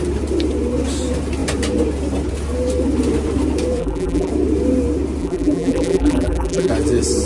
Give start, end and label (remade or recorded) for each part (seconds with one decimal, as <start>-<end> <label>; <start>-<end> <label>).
0.0-3.8 recorded; 3.8-4.3 remade; 4.3-5.2 recorded; 5.2-6.7 remade; 6.7-7.3 recorded